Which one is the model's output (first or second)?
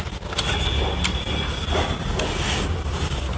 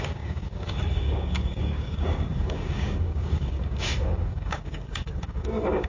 second